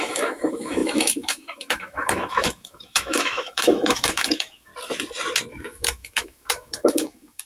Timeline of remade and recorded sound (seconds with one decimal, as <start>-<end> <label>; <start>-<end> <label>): 0.0-4.7 remade; 4.7-5.5 recorded; 5.5-7.5 remade

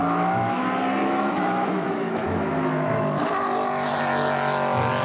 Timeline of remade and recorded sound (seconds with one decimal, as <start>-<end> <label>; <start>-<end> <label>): 0.0-0.6 remade; 0.6-1.0 recorded; 1.0-4.0 remade; 4.0-5.0 recorded

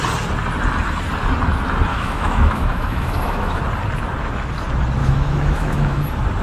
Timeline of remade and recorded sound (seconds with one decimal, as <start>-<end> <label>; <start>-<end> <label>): 0.0-1.9 recorded; 1.9-3.6 remade; 3.6-5.0 recorded; 5.0-6.0 remade; 6.0-6.4 recorded

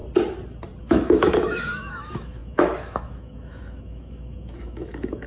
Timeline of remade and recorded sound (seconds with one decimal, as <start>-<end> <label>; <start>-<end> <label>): 0.0-0.8 recorded; 0.8-5.3 remade

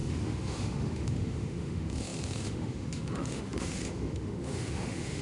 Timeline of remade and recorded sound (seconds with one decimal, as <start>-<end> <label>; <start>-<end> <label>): 0.0-5.2 remade

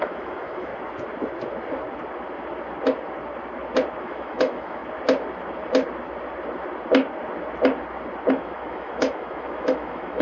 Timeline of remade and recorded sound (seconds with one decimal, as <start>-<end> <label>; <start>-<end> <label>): 0.0-0.7 remade; 0.7-4.0 recorded; 4.0-4.8 remade; 4.8-8.3 recorded; 8.3-10.2 remade